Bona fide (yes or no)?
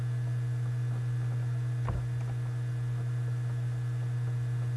yes